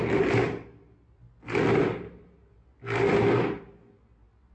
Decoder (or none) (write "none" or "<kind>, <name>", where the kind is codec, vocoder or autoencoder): none